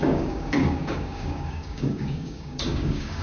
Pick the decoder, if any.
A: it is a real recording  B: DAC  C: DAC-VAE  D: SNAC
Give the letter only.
B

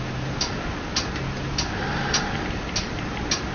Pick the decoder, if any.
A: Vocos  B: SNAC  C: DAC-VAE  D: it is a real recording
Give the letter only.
D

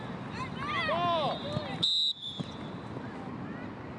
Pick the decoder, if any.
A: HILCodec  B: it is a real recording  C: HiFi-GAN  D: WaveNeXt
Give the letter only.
B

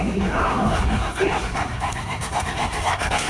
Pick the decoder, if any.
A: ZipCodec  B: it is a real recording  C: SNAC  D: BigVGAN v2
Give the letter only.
C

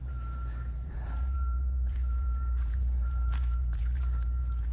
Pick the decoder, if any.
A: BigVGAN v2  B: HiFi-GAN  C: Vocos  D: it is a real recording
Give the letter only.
A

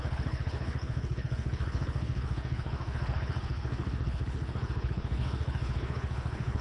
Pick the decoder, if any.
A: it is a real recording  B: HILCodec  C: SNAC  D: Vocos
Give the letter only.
B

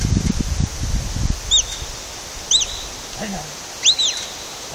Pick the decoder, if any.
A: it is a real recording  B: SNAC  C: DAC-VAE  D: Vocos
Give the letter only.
A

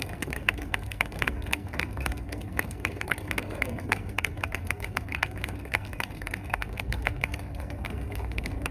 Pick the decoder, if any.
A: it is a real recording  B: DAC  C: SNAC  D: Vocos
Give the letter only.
C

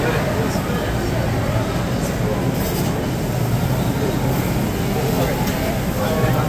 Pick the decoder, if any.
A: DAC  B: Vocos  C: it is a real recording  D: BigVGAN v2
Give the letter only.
C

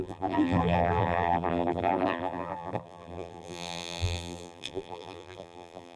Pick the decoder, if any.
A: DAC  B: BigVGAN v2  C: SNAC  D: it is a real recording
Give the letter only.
B